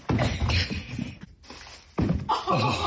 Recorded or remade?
recorded